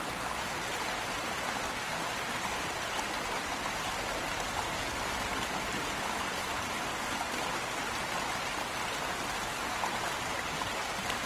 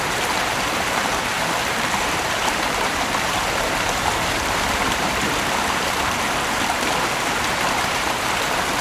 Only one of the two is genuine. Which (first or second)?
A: first